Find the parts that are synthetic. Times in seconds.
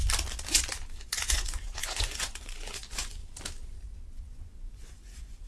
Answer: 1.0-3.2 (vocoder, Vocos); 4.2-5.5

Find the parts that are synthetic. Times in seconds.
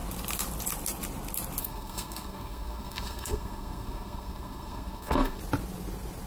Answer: 1.6-5.4 (codec, SNAC)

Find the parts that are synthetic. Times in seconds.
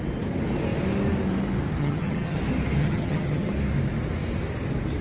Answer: 1.8-2.4 (vocoder, HiFi-GAN); 2.8-3.5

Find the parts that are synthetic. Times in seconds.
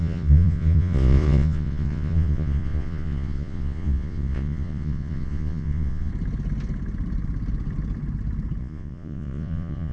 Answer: 0.0-6.1 (vocoder, Vocos); 8.6-9.9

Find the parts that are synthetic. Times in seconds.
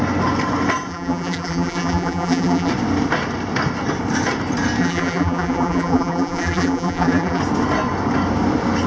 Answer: 0.9-2.7 (vocoder, BigVGAN v2); 4.8-7.4